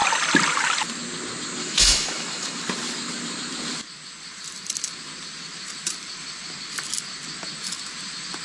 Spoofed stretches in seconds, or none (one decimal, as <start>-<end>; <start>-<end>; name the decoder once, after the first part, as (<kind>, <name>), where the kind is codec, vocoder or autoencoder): 1.6-2.6 (autoencoder, DAC-VAE)